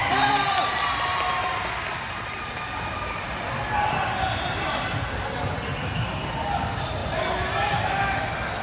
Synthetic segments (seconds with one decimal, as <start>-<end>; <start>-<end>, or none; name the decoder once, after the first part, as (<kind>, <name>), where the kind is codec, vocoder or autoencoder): none